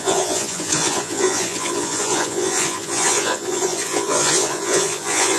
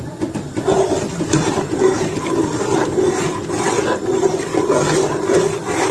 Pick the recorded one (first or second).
second